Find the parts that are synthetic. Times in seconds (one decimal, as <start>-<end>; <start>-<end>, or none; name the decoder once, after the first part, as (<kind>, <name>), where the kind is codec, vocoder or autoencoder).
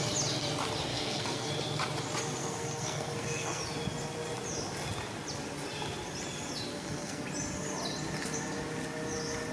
0.9-1.5 (codec, SNAC); 2.4-3.6; 6.7-7.2